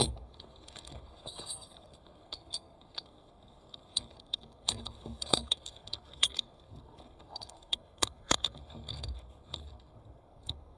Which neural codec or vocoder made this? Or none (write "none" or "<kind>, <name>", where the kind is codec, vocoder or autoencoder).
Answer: codec, SNAC